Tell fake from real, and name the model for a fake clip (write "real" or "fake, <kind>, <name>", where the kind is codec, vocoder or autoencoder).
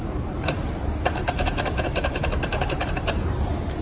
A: real